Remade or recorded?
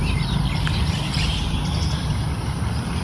recorded